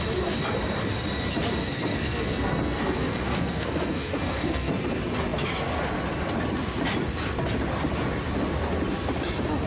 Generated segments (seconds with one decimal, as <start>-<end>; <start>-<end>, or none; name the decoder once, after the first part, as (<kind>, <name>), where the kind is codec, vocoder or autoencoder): 1.6-4.7 (codec, SNAC)